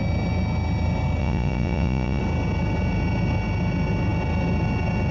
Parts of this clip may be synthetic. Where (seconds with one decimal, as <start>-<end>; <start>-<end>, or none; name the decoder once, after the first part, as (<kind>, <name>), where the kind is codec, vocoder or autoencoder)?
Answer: 1.2-2.2 (vocoder, Vocos)

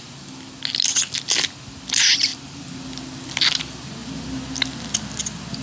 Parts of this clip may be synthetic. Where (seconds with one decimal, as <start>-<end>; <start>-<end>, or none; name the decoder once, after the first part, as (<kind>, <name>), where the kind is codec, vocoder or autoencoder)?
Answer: none

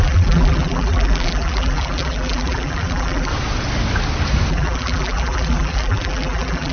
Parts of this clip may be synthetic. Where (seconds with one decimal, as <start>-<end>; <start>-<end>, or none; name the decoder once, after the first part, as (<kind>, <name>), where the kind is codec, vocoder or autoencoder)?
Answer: 0.0-3.3 (vocoder, BigVGAN v2); 4.5-6.7

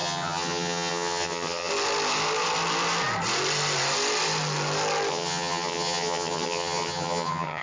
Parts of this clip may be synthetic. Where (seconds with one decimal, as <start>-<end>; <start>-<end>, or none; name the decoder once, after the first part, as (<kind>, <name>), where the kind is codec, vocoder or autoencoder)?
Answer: 0.0-1.7 (vocoder, HiFi-GAN); 5.1-7.6

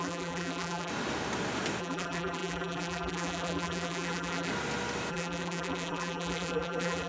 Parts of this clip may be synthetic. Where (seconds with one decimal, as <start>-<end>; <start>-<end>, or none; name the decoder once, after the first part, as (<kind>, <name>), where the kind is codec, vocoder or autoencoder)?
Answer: 0.0-0.9 (vocoder, BigVGAN v2); 1.8-4.5; 5.1-7.1

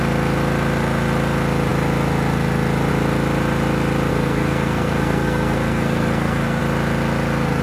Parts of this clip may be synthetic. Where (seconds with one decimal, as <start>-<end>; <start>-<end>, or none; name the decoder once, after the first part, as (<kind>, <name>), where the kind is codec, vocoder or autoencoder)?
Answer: 4.1-6.6 (codec, SNAC)

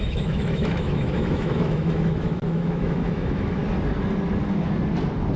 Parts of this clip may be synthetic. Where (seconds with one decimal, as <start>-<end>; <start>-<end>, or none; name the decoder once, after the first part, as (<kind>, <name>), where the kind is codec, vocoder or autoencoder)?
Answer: 0.0-3.6 (autoencoder, DAC-VAE)

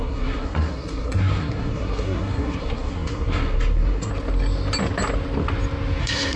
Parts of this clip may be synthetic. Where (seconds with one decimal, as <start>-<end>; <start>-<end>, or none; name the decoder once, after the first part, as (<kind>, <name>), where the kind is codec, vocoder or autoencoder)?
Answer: 0.0-4.1 (codec, SNAC); 6.0-6.4